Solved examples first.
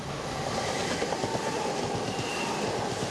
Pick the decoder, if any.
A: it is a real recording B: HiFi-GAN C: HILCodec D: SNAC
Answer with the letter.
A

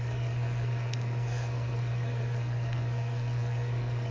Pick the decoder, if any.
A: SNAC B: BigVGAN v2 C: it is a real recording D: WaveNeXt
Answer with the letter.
A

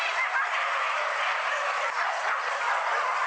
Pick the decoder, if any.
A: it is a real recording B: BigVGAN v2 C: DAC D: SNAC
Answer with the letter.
A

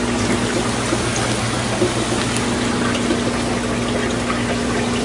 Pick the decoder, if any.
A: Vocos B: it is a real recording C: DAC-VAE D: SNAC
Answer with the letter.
B